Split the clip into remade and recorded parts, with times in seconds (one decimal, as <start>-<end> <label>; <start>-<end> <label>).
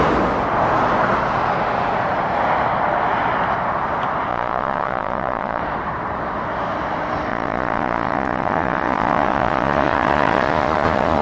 0.0-4.3 recorded; 4.3-5.6 remade; 5.6-7.3 recorded; 7.3-11.2 remade